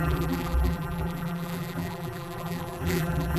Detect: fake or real fake